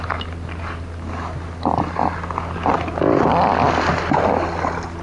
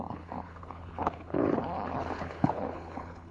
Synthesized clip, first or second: second